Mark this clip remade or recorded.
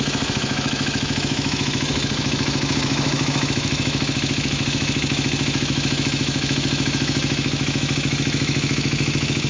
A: remade